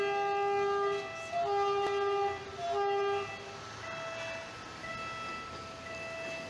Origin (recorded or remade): recorded